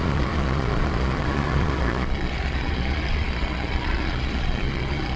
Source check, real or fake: fake